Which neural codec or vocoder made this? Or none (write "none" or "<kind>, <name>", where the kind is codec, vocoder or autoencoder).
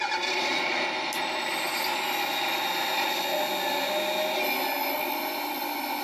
none